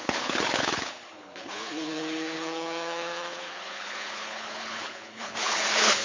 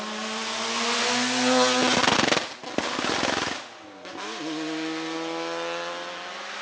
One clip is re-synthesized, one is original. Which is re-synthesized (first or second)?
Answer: first